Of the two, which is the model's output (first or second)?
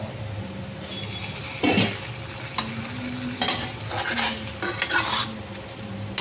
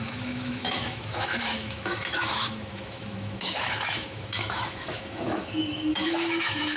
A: second